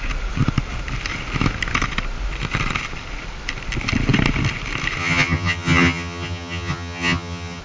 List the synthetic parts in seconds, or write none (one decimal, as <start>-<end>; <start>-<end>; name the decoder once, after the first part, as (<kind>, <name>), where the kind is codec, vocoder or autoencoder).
5.0-7.6 (vocoder, HiFi-GAN)